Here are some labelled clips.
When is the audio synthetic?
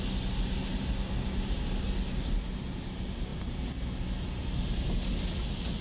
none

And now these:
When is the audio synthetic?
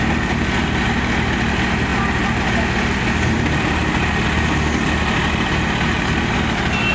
0.0-1.9; 6.0-6.9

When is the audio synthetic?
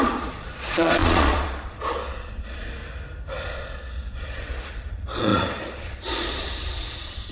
0.0-2.8; 3.5-7.3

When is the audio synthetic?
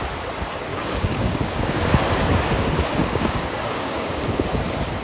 0.7-1.8; 3.0-4.5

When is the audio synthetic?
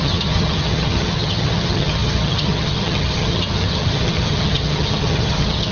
0.0-5.7